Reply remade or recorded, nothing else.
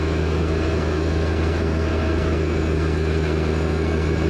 remade